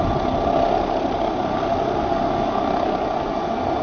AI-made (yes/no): no